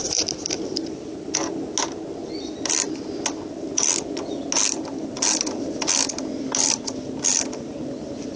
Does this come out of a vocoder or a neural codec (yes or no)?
no